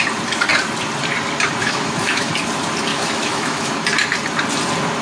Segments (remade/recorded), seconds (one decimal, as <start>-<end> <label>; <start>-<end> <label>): 0.0-1.6 recorded; 1.6-2.3 remade; 2.3-2.9 recorded; 2.9-3.7 remade; 3.7-5.0 recorded